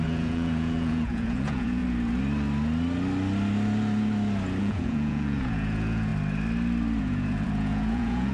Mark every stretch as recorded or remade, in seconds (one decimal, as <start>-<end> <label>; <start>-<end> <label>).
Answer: 0.0-1.8 remade; 1.8-4.6 recorded; 4.6-6.1 remade; 6.1-7.0 recorded; 7.0-8.3 remade